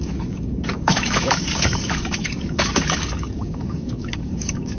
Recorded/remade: remade